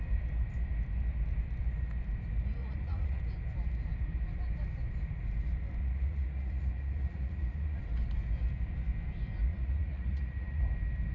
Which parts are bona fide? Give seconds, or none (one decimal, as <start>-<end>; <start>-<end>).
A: 0.0-2.6; 3.2-5.8; 7.8-9.5; 10.6-11.1